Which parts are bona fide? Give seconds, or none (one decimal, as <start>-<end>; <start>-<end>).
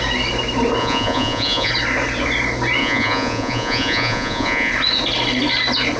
0.0-0.8; 1.7-2.8; 4.7-6.0